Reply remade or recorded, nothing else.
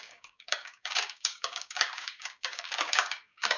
remade